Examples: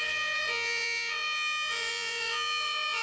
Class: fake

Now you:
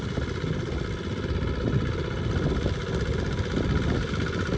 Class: real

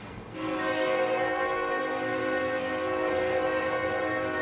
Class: fake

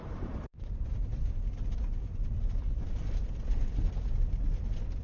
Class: real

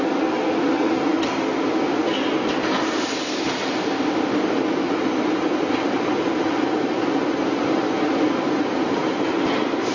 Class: real